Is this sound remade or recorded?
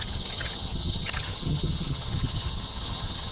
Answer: remade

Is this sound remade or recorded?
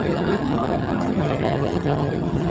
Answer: remade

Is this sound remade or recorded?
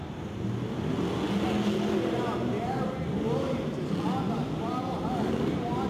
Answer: recorded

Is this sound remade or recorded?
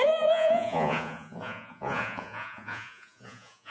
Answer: remade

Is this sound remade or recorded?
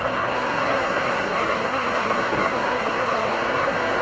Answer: remade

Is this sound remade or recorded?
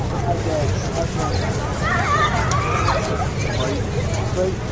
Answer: recorded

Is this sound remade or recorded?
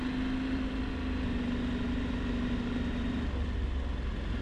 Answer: recorded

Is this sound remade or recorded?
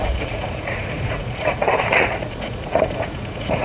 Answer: remade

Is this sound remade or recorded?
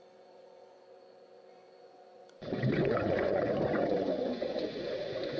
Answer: remade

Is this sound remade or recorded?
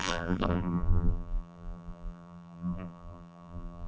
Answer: remade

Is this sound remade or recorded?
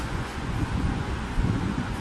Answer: remade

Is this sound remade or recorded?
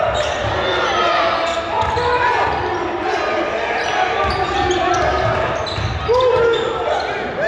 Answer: recorded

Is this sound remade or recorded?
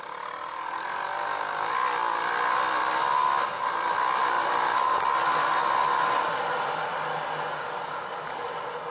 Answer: recorded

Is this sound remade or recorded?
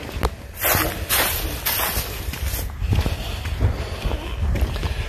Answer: recorded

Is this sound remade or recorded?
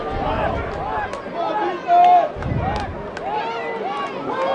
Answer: recorded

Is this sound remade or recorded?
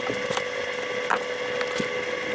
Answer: recorded